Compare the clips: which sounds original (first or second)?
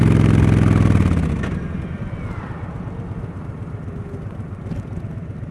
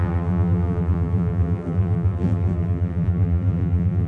first